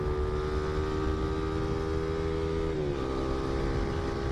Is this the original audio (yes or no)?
yes